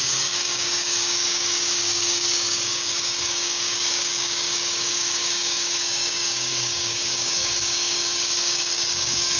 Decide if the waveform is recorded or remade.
remade